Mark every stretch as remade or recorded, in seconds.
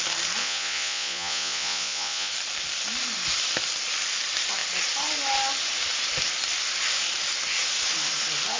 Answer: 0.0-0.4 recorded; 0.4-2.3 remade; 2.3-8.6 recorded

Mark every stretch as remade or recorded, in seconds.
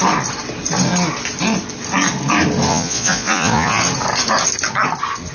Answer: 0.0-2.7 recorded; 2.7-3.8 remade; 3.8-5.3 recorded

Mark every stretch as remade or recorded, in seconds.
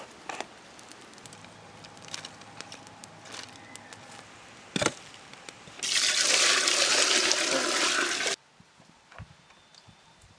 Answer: 0.0-10.4 recorded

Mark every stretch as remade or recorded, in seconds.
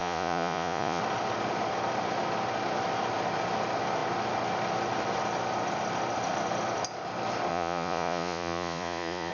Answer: 0.0-1.0 remade; 1.0-7.5 recorded; 7.5-9.3 remade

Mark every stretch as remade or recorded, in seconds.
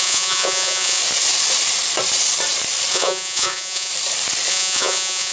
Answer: 0.0-1.0 remade; 1.0-2.9 recorded; 2.9-3.9 remade; 3.9-4.5 recorded; 4.5-5.3 remade